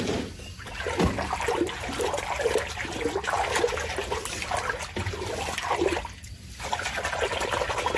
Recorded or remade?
recorded